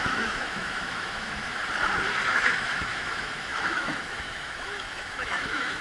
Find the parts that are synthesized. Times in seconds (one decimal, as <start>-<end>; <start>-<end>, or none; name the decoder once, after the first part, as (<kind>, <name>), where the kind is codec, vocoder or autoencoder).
0.0-1.6 (autoencoder, DAC-VAE); 2.3-5.8